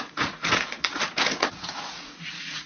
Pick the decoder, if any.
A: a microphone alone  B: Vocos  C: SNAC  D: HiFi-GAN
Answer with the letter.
B